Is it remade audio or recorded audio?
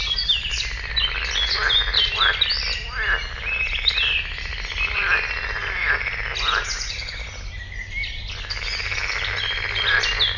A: recorded